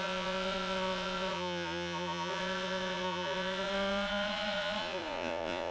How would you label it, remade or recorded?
remade